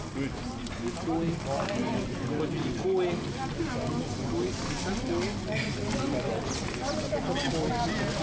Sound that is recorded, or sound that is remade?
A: recorded